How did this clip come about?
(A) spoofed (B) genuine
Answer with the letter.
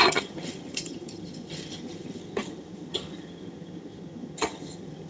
A